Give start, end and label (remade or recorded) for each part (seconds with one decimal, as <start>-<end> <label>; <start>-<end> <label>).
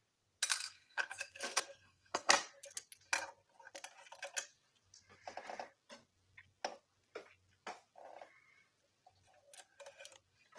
0.0-0.5 recorded; 0.5-2.3 remade; 2.3-10.6 recorded